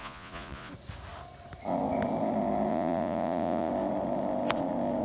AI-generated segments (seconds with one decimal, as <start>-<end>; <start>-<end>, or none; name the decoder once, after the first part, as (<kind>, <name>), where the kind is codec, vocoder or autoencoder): 0.0-0.7 (vocoder, Vocos); 2.7-3.7